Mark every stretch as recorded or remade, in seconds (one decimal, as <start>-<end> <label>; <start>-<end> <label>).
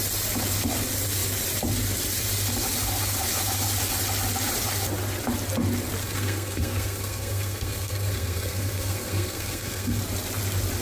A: 0.0-6.0 recorded; 6.0-10.0 remade; 10.0-10.8 recorded